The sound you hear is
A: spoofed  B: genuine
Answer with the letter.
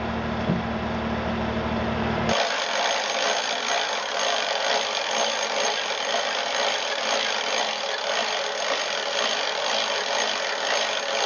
B